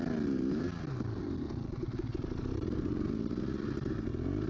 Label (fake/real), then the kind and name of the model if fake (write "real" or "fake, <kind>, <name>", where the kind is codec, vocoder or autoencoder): real